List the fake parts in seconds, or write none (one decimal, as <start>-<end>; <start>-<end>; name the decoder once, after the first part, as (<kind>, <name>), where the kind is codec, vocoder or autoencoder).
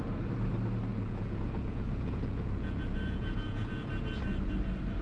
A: 0.9-3.9 (vocoder, Vocos)